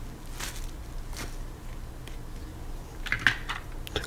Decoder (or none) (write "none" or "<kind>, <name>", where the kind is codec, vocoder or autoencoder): none